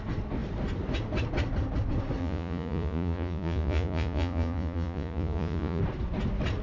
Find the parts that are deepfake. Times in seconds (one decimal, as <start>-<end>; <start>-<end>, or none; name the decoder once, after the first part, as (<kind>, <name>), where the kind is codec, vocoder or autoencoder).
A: 2.2-5.8 (vocoder, Vocos)